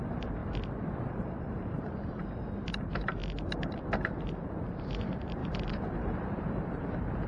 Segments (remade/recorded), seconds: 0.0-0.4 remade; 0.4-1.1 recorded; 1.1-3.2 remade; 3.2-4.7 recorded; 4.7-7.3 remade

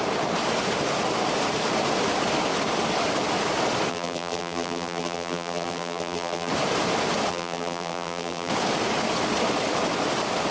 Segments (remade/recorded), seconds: 0.0-3.9 recorded; 3.9-6.5 remade; 6.5-7.3 recorded; 7.3-8.5 remade; 8.5-10.5 recorded

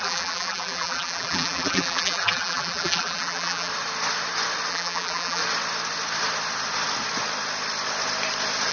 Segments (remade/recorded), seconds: 0.0-3.7 remade; 3.7-4.7 recorded; 4.7-5.4 remade; 5.4-8.7 recorded

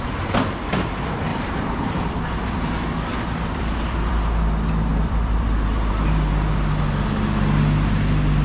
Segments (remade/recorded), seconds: 0.0-1.3 recorded; 1.3-4.1 remade; 4.1-4.9 recorded; 4.9-6.8 remade; 6.8-8.4 recorded